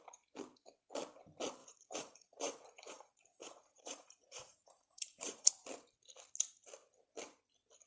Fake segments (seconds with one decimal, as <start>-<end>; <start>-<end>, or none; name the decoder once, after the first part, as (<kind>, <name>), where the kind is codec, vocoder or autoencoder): 1.6-5.5 (vocoder, Vocos)